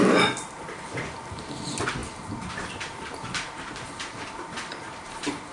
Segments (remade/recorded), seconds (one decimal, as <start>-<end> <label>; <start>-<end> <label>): 0.0-5.5 recorded